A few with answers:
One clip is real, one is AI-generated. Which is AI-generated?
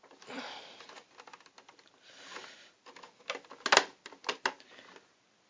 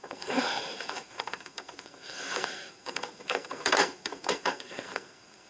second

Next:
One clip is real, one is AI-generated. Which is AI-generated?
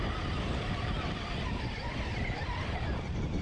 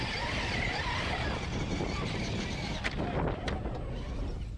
first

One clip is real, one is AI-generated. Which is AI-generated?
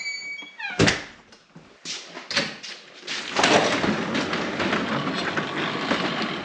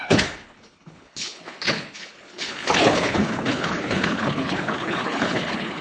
second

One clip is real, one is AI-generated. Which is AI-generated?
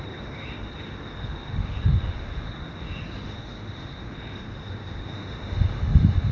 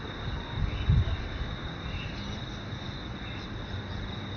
first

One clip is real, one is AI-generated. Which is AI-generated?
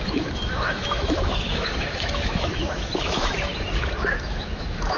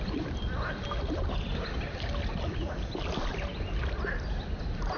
first